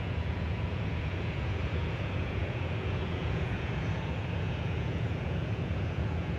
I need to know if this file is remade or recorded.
remade